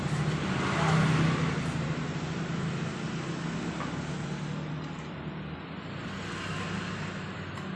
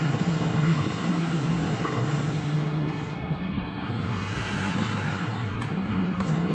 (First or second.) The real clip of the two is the first